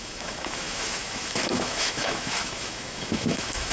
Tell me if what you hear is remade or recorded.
remade